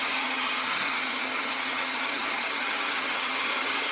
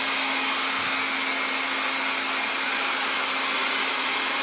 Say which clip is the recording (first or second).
second